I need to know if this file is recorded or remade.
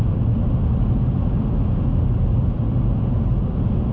recorded